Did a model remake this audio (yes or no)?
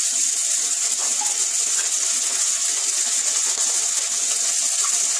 yes